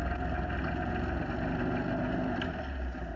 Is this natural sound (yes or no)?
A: yes